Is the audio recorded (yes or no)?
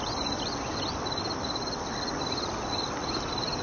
yes